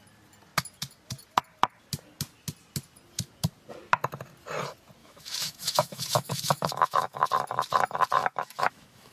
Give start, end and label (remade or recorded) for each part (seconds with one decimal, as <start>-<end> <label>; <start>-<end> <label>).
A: 0.0-5.0 recorded; 5.0-7.3 remade; 7.3-8.2 recorded; 8.2-9.1 remade